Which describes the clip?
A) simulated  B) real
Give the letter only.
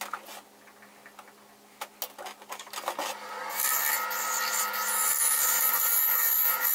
B